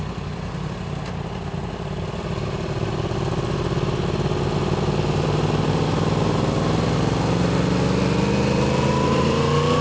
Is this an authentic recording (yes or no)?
yes